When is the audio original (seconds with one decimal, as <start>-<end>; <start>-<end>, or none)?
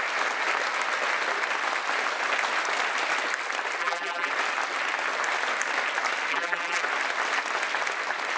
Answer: 0.0-3.8; 4.3-6.3; 6.8-8.4